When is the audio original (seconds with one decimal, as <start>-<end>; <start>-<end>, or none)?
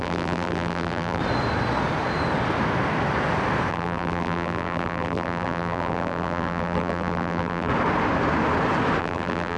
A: 1.2-3.7; 7.7-9.0